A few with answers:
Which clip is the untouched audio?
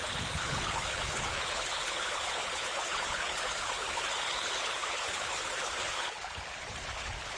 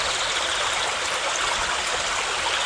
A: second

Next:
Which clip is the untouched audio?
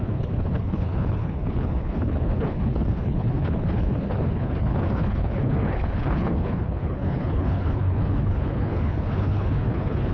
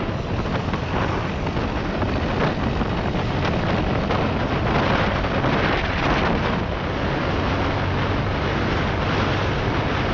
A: second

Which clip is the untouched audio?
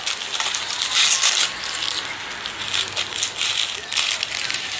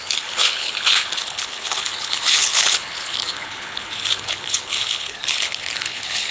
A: first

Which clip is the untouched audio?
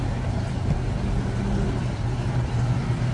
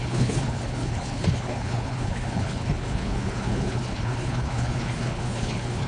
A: first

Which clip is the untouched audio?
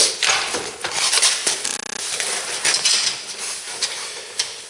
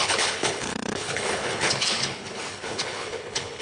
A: first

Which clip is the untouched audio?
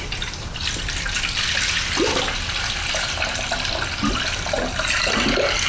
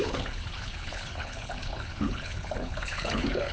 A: first